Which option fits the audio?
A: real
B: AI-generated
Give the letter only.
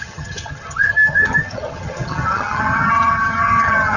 B